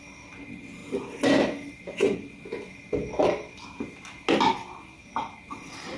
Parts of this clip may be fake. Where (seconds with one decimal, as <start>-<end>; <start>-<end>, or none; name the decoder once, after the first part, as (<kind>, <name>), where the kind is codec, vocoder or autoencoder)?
none